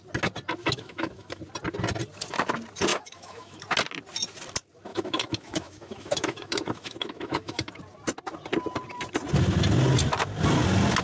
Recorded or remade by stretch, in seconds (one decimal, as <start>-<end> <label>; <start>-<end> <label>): 0.0-0.6 recorded; 0.6-1.4 remade; 1.4-2.9 recorded; 2.9-3.6 remade; 3.6-4.9 recorded; 4.9-7.8 remade; 7.8-11.0 recorded